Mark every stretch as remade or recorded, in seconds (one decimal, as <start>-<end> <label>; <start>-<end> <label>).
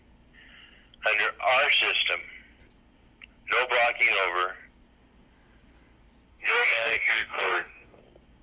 0.0-6.3 recorded; 6.3-8.0 remade; 8.0-8.4 recorded